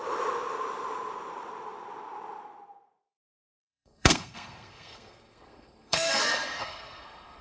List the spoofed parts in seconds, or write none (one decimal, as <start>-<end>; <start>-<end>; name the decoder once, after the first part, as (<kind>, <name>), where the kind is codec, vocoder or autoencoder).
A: 3.5-7.4 (codec, SNAC)